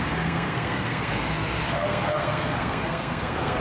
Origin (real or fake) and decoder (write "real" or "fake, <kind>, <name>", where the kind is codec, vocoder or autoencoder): fake, codec, SNAC